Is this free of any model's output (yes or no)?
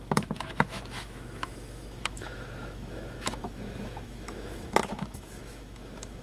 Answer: no